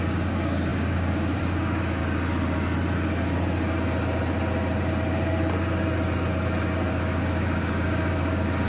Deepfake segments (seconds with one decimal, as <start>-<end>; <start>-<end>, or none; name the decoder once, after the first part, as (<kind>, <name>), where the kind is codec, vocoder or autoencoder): 0.0-2.0 (codec, DAC); 6.8-8.7